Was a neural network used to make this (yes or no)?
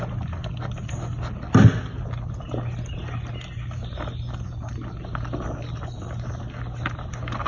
no